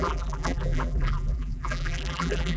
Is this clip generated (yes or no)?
yes